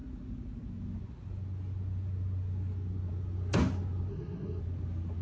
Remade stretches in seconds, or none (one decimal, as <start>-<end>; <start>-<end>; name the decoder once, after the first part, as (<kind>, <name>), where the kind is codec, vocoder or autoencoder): 4.1-4.6 (codec, SNAC)